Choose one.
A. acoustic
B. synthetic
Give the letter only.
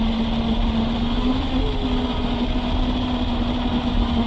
A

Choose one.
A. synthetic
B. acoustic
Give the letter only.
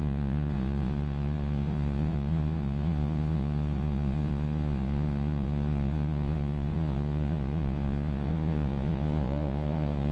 A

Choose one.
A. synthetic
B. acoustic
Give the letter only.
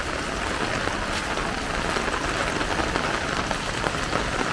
B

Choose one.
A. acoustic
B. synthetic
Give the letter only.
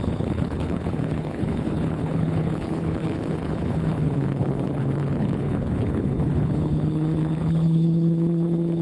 B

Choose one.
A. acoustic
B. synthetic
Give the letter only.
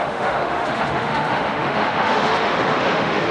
B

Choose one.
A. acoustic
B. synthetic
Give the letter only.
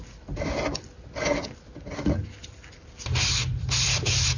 A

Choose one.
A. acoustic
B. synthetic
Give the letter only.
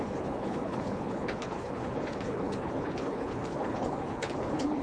B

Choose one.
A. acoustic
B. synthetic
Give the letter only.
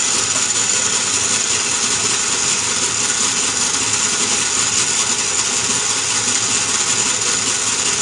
A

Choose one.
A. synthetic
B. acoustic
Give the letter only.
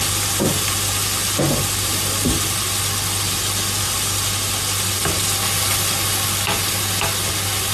B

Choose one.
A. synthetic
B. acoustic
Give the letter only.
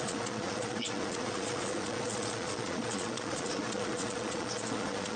A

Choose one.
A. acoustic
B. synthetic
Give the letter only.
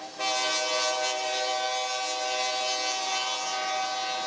A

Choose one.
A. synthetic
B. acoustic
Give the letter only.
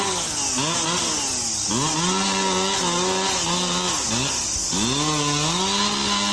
B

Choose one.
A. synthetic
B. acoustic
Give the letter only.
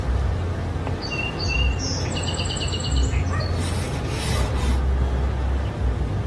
B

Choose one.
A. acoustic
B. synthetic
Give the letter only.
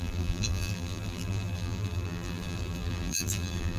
B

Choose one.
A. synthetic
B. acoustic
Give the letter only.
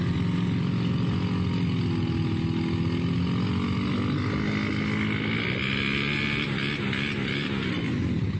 B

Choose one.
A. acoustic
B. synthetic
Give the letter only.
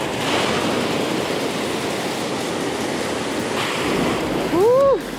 A